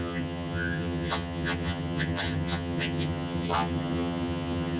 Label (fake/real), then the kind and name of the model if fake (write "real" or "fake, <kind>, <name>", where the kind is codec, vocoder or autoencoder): fake, vocoder, HiFi-GAN